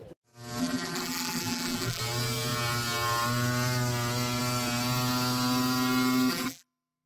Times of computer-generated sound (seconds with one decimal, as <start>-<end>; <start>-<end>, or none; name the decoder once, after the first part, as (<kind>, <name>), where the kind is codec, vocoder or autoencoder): 0.6-2.0 (vocoder, BigVGAN v2); 6.3-7.1